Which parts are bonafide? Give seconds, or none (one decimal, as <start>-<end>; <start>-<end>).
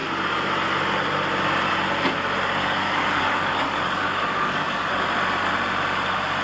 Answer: 0.0-2.6; 5.0-6.4